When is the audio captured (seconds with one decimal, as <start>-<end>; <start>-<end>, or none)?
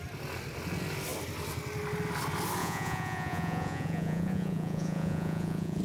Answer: 0.0-2.6